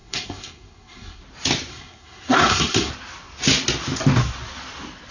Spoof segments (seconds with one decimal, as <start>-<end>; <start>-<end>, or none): 0.0-1.2; 1.7-2.9